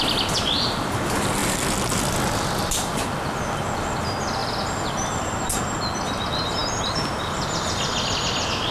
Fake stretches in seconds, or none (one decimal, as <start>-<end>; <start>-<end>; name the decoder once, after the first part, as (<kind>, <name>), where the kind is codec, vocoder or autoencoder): 4.4-5.4 (vocoder, BigVGAN v2)